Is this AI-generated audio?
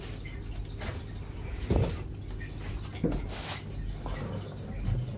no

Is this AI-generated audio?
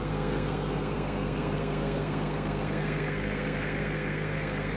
yes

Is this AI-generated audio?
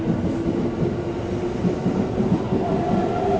no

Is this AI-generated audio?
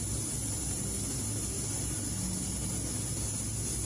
no